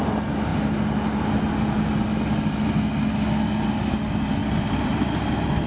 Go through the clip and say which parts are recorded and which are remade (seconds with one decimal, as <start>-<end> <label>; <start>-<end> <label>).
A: 0.0-5.7 recorded